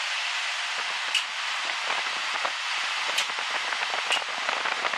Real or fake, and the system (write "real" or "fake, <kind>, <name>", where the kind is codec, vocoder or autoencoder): real